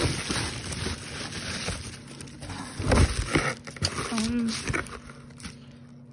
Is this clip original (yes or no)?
yes